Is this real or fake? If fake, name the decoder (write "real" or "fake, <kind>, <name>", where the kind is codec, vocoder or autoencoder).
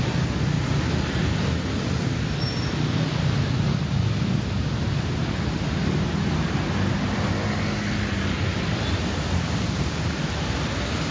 real